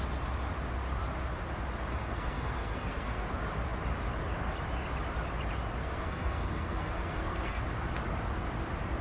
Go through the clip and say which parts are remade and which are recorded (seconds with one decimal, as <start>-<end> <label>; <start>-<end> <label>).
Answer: 0.0-1.9 recorded; 1.9-3.2 remade; 3.2-5.8 recorded; 5.8-7.6 remade; 7.6-9.0 recorded